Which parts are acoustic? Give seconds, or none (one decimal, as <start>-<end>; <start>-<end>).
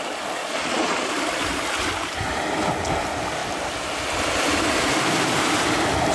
0.0-0.4; 1.1-6.1